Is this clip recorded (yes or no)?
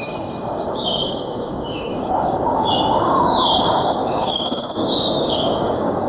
no